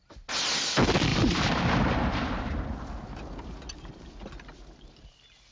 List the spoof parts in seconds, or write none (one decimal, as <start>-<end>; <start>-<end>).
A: 1.1-2.4